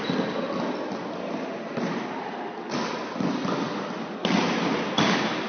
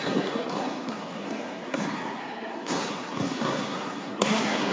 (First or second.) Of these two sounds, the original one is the first